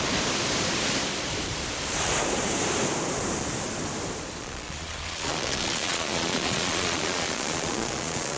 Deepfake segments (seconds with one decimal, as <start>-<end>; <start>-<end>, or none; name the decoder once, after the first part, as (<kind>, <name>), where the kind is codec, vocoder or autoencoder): 4.4-8.4 (vocoder, Vocos)